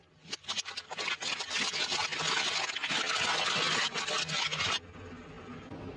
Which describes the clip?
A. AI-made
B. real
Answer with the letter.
B